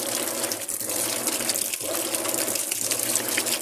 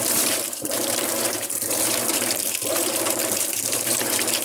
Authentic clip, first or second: first